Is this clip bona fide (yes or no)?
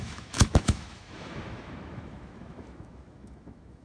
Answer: no